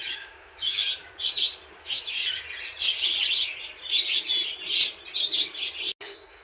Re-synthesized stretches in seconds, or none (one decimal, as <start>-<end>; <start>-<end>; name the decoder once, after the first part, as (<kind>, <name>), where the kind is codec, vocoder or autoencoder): 0.0-0.8 (autoencoder, DAC-VAE); 1.8-2.2; 6.0-6.4